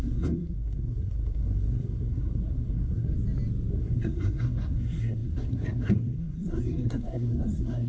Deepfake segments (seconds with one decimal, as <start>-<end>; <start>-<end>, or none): 0.0-3.1; 3.7-7.9